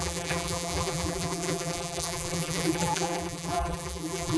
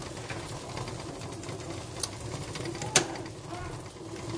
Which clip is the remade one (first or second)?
first